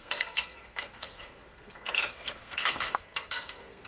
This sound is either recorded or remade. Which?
remade